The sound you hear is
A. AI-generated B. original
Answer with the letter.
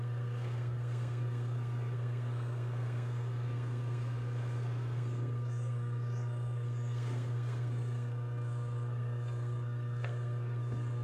A